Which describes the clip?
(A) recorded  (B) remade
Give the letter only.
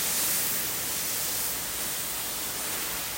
A